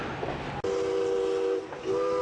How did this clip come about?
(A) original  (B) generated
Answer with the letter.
A